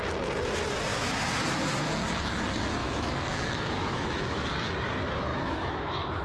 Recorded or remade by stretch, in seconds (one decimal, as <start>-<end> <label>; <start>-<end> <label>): 0.0-2.8 recorded; 2.8-4.5 remade; 4.5-5.3 recorded; 5.3-6.2 remade